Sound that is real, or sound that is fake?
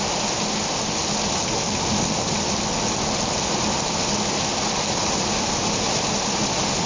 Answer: real